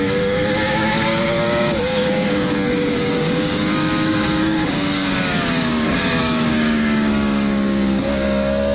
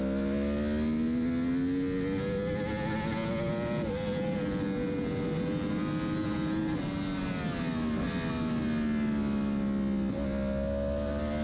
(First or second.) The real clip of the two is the second